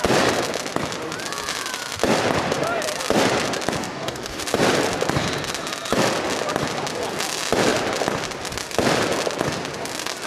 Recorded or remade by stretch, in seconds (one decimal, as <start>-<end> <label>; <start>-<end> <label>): 0.0-3.8 recorded; 3.8-4.4 remade; 4.4-10.3 recorded